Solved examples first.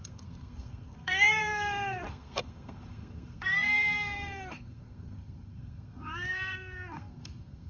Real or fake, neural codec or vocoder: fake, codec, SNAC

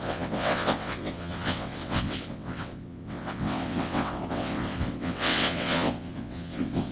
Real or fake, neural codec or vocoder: fake, vocoder, WaveNeXt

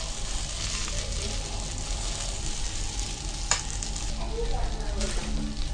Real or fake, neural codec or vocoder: real